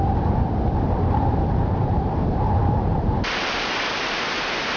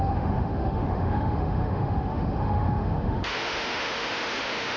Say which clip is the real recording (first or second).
first